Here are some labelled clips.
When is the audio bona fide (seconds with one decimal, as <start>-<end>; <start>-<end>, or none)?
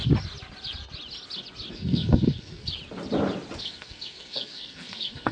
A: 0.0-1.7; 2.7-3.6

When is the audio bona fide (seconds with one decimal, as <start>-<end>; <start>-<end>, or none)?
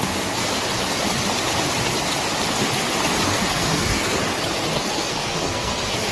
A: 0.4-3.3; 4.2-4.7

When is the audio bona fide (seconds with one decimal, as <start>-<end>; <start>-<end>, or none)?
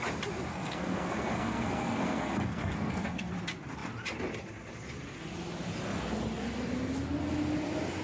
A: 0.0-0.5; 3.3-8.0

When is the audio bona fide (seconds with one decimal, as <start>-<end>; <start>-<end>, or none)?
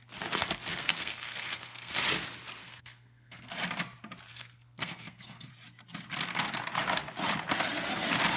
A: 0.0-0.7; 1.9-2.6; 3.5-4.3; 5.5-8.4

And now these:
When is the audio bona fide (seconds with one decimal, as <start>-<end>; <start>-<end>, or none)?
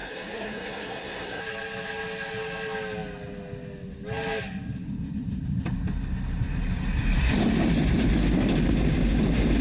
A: 1.4-9.6